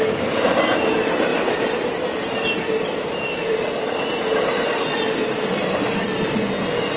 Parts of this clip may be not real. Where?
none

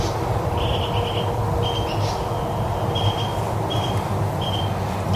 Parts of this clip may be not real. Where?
none

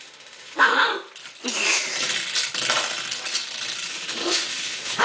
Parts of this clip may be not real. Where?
0.0-0.9 (autoencoder, DAC-VAE); 3.9-5.0

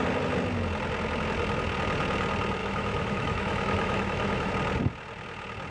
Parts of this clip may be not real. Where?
2.6-4.5 (autoencoder, DAC-VAE)

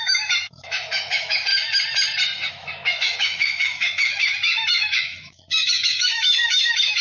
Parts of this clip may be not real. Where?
0.0-1.5 (autoencoder, DAC-VAE); 2.5-7.0

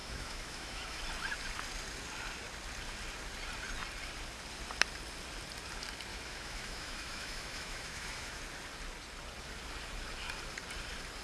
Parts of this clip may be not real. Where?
0.0-1.0 (autoencoder, DAC-VAE); 6.1-8.4